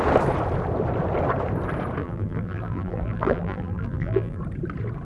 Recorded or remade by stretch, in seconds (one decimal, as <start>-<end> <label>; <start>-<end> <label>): 0.0-2.0 recorded; 2.0-4.4 remade; 4.4-5.0 recorded